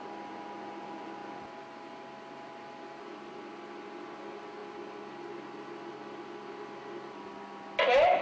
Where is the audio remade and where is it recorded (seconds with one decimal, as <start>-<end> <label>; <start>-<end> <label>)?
0.0-8.2 recorded